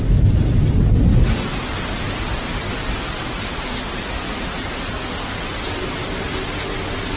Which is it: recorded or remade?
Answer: recorded